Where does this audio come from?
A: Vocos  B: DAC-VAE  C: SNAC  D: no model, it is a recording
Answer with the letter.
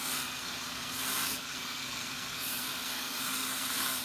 C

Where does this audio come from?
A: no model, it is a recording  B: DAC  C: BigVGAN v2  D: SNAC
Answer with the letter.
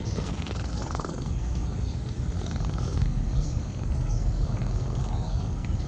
D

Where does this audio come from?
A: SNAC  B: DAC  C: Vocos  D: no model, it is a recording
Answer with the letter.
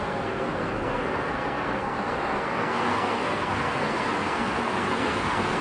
A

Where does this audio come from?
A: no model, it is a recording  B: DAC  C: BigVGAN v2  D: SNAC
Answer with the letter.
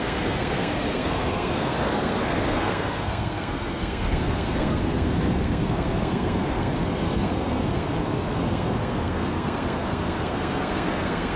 D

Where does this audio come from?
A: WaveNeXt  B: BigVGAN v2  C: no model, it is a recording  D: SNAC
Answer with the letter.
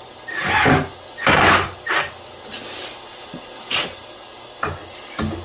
C